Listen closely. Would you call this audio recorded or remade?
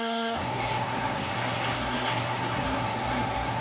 remade